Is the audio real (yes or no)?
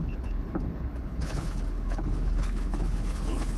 no